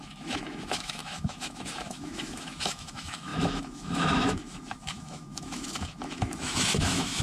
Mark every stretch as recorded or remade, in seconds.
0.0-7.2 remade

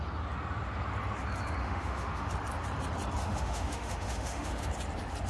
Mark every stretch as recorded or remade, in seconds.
0.0-1.6 recorded; 1.6-2.3 remade; 2.3-3.2 recorded; 3.2-4.7 remade; 4.7-5.3 recorded

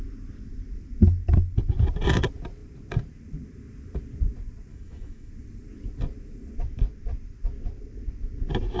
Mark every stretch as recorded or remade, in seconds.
0.0-4.7 recorded; 4.7-5.3 remade; 5.3-8.8 recorded